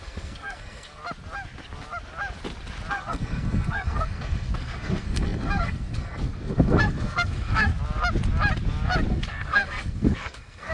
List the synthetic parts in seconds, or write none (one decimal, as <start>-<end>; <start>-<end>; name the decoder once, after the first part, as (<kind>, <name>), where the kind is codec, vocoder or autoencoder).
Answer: 0.0-1.0 (codec, SNAC); 2.9-7.7; 9.1-10.7